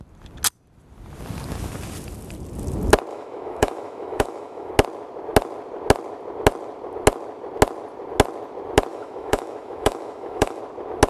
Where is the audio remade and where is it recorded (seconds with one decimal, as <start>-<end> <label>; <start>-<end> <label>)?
0.0-3.1 recorded; 3.1-4.7 remade; 4.7-8.9 recorded; 8.9-10.6 remade; 10.6-11.1 recorded